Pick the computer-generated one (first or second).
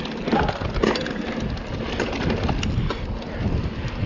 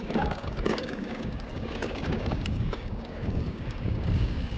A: second